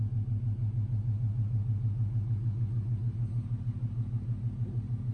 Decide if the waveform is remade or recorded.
recorded